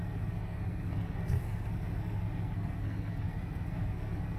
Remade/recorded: remade